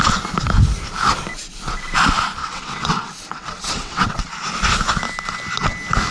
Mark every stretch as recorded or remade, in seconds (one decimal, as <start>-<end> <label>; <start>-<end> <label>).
0.0-2.4 recorded; 2.4-4.3 remade; 4.3-6.1 recorded